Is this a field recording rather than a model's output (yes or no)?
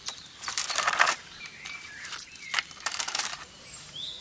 no